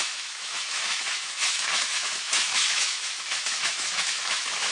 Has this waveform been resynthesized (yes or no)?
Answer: yes